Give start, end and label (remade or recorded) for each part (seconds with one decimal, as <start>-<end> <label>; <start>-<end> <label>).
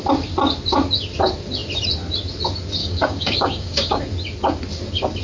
0.0-2.8 recorded; 2.8-4.0 remade; 4.0-5.2 recorded